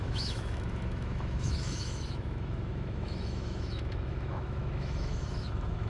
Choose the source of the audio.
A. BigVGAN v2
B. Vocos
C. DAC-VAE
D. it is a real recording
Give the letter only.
C